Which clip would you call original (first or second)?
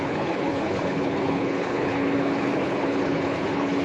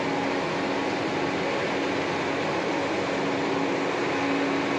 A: second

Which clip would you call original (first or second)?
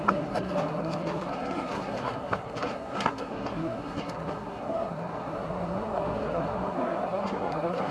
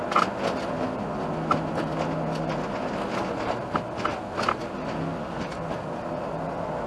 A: second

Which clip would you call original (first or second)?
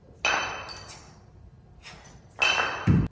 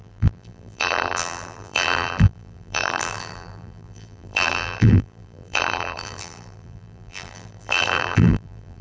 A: first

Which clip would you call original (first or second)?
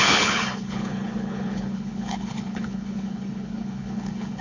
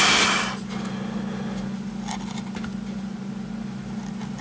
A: second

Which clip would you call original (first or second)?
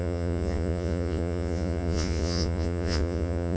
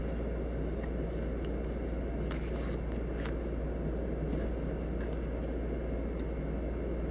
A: second